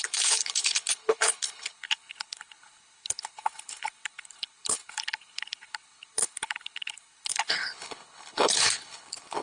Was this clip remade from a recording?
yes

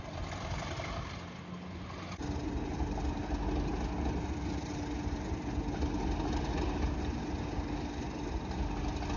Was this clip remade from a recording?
no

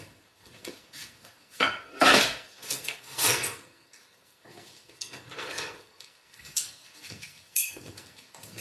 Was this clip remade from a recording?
yes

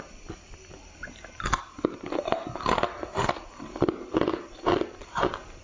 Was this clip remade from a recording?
no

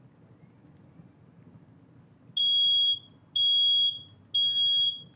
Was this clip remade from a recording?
no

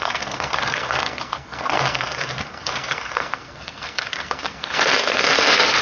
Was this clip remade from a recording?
yes